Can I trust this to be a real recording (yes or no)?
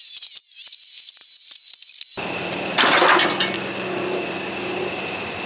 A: yes